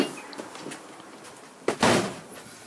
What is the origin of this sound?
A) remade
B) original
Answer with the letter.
A